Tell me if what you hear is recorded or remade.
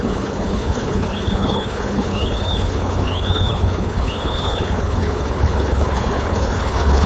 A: remade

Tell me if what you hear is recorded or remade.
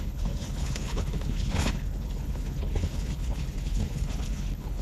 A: remade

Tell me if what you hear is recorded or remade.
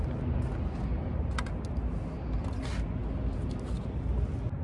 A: recorded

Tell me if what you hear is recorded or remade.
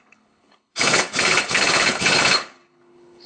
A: remade